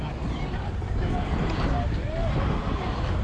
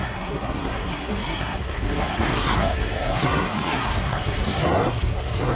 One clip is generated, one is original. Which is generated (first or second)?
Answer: second